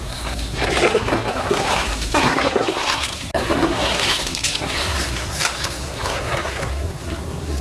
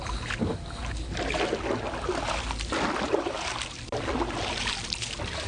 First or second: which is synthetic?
first